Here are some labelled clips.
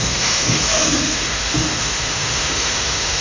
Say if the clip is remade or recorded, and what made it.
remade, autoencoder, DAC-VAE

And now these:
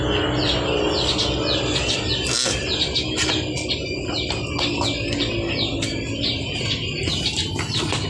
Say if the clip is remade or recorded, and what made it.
recorded